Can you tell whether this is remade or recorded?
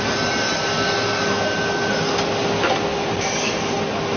recorded